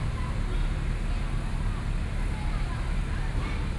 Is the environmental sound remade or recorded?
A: recorded